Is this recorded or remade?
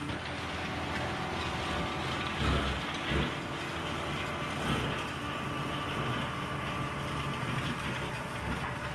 recorded